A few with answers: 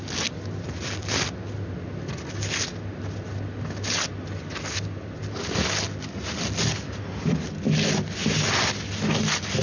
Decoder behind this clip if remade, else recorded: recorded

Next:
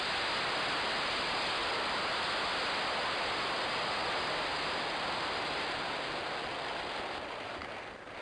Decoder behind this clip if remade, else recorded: recorded